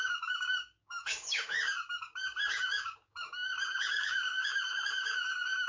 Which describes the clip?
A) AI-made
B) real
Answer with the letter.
A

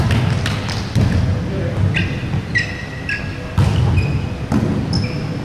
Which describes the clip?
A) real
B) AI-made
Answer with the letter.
A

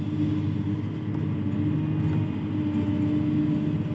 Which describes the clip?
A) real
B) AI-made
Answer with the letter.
A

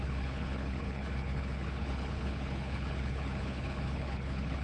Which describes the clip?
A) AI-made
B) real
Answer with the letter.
A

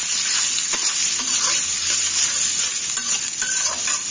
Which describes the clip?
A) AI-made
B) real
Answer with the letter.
B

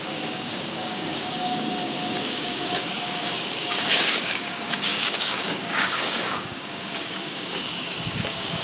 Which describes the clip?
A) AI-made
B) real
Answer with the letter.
A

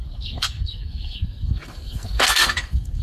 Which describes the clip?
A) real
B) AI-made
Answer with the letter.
B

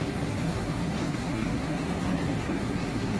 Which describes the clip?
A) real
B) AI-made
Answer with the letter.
B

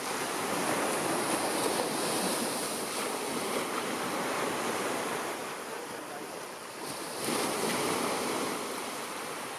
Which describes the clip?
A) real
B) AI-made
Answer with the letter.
B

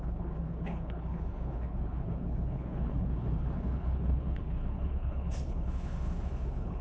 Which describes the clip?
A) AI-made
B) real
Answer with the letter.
A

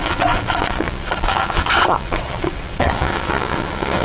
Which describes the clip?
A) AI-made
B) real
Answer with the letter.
A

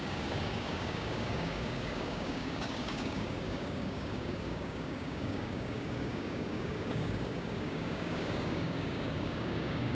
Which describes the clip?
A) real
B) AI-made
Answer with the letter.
B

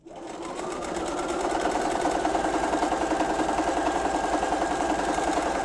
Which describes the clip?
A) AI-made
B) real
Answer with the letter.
A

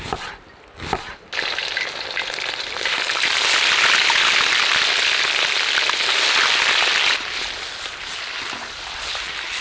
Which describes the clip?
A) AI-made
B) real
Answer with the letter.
B